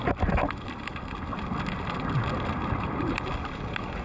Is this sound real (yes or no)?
yes